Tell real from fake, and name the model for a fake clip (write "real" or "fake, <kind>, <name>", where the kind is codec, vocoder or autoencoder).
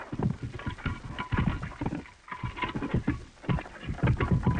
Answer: real